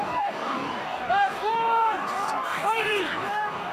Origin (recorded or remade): remade